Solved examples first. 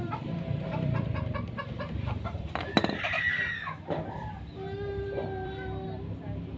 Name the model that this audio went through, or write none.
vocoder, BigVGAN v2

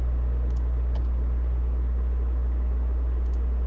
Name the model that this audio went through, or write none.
none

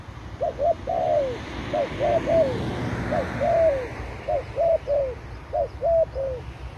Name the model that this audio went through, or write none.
none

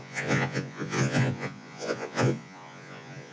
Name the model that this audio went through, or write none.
vocoder, Vocos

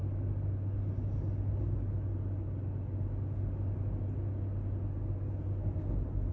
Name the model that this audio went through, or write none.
none